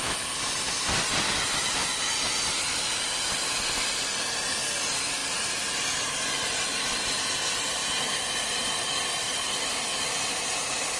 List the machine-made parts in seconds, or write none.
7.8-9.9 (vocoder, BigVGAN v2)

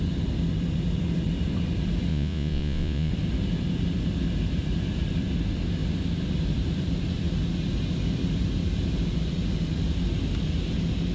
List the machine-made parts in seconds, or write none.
2.1-3.1 (vocoder, Vocos)

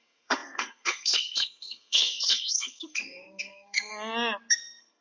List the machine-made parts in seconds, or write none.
0.0-3.9 (codec, SNAC); 4.5-5.0